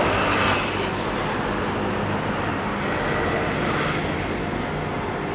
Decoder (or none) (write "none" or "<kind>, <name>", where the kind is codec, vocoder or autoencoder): none